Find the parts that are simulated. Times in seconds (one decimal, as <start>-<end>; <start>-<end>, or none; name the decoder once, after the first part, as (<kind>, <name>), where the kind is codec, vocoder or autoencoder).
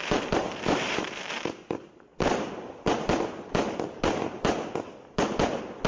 0.0-2.1 (vocoder, BigVGAN v2)